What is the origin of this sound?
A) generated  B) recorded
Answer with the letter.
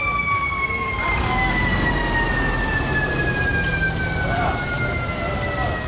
B